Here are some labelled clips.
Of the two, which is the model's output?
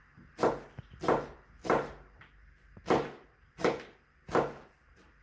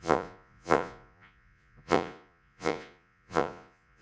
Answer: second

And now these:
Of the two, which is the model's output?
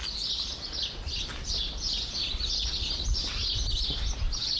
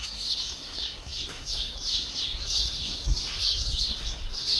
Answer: second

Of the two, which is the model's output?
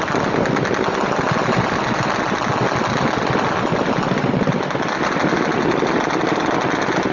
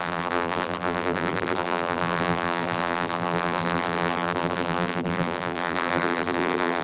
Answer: second